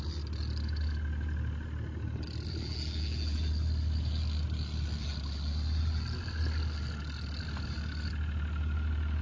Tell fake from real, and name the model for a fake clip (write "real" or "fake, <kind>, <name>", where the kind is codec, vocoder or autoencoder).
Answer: real